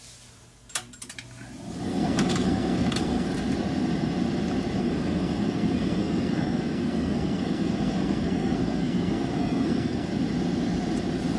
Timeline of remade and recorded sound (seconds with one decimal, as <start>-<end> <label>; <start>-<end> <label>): 0.0-1.9 recorded; 1.9-3.3 remade; 3.3-4.8 recorded; 4.8-10.1 remade; 10.1-11.4 recorded